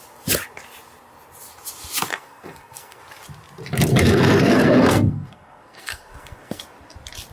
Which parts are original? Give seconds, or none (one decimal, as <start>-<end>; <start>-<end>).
0.0-2.1; 3.0-3.9; 6.6-7.3